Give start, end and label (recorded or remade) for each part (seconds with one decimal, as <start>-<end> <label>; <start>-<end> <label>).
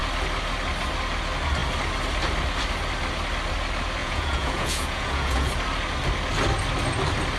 0.0-4.0 recorded; 4.0-5.5 remade; 5.5-7.4 recorded